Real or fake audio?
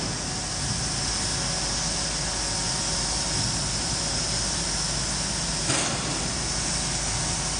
real